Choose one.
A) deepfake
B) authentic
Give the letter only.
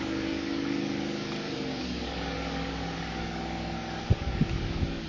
A